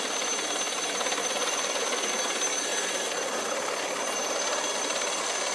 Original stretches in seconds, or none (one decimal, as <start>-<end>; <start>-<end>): 0.0-1.2; 2.1-5.5